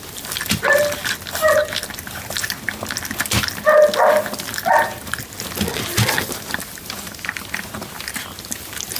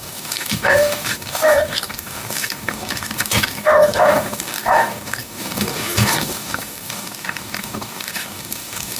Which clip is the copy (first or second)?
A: second